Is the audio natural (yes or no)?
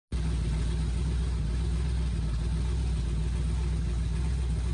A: yes